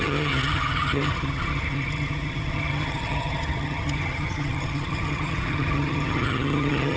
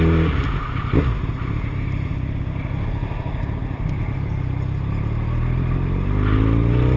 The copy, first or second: first